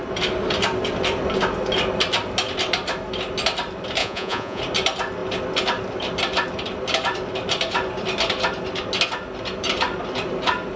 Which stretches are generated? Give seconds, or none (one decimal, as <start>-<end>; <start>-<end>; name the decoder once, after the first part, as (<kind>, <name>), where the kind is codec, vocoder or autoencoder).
4.0-4.6 (vocoder, Vocos)